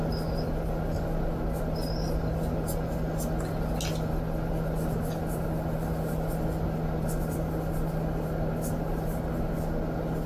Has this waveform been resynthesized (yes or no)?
no